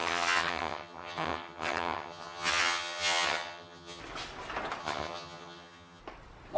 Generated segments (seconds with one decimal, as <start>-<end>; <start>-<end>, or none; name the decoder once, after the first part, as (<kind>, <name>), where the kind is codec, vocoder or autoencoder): 0.0-4.0 (vocoder, HiFi-GAN); 4.8-6.0